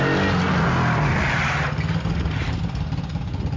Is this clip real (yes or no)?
yes